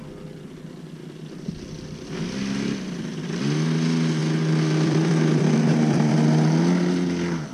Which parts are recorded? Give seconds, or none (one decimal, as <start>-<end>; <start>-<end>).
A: 0.0-1.0; 3.4-4.2; 6.1-7.5